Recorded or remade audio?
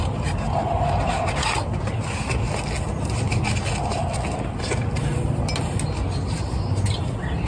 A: recorded